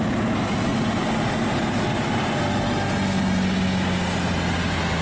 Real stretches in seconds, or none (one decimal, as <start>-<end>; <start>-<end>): 0.0-5.0